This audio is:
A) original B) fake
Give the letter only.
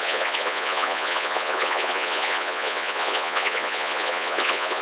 B